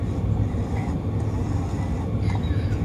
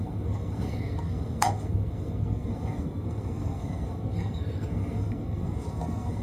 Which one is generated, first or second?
second